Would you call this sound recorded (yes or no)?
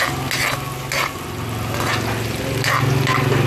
yes